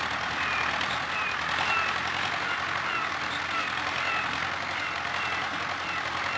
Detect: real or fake real